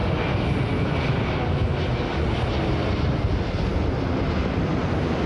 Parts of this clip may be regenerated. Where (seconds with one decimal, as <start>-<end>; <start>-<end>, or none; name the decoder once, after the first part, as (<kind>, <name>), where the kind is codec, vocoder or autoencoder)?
3.2-5.3 (vocoder, BigVGAN v2)